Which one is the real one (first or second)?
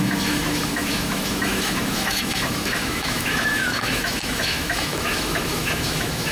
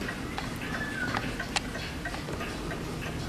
second